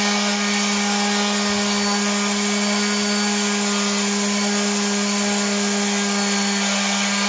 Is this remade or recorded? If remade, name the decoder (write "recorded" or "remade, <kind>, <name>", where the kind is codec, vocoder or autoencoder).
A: recorded